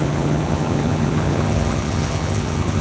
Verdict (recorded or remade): remade